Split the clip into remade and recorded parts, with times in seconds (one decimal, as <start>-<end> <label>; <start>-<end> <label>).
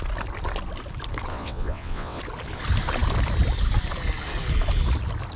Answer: 0.0-1.3 recorded; 1.3-2.2 remade; 2.2-5.4 recorded